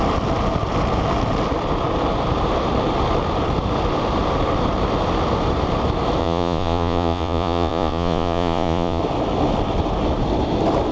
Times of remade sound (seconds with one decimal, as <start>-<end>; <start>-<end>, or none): 6.2-9.0